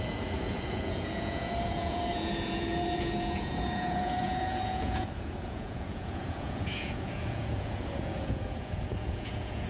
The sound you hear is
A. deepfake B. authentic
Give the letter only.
A